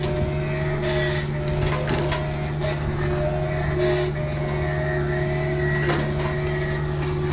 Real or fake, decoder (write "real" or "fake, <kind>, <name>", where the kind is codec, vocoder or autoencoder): real